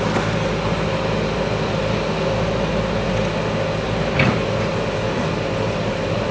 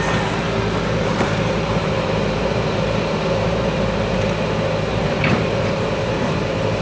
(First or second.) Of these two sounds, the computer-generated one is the second